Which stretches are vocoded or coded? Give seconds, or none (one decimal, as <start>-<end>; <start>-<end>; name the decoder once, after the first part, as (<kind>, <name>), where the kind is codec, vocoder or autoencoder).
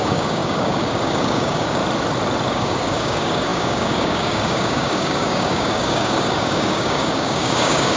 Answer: 0.0-1.8 (codec, DAC); 2.5-8.0